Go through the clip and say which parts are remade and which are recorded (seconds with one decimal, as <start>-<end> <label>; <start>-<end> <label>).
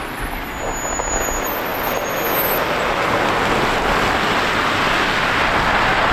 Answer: 0.0-6.1 recorded